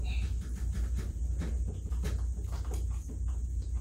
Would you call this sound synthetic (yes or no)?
no